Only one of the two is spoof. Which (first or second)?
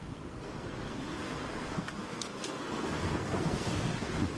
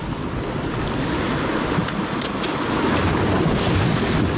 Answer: first